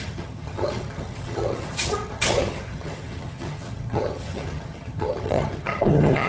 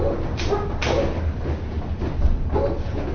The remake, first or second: first